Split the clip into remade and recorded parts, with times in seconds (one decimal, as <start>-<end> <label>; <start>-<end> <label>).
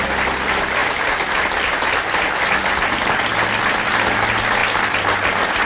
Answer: 0.0-5.6 recorded